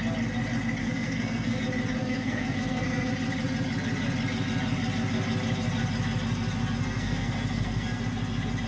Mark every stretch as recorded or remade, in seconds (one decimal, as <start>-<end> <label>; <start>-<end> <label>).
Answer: 0.0-0.8 recorded; 0.8-1.6 remade; 1.6-2.0 recorded; 2.0-3.1 remade; 3.1-6.8 recorded; 6.8-8.0 remade; 8.0-8.7 recorded